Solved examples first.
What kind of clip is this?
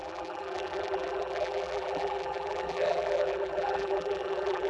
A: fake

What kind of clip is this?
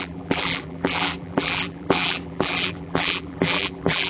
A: fake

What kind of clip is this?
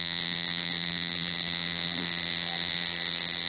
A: fake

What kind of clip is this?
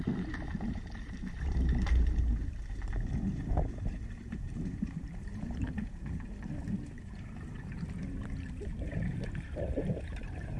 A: fake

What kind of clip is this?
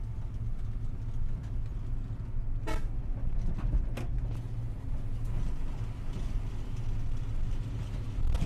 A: real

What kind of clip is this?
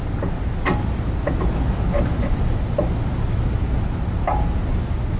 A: real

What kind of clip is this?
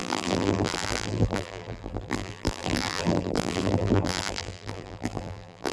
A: fake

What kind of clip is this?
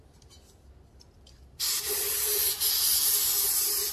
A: real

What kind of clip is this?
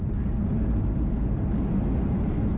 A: real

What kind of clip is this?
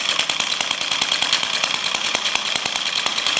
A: real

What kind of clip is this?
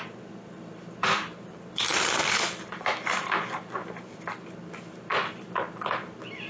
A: fake